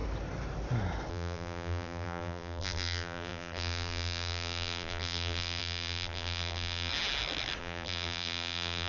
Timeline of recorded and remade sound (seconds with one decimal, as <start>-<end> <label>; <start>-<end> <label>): 0.0-1.1 recorded; 1.1-6.9 remade; 6.9-7.6 recorded; 7.6-8.9 remade